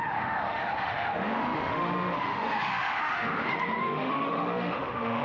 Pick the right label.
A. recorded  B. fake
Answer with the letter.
B